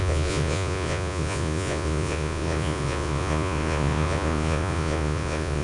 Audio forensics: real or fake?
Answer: fake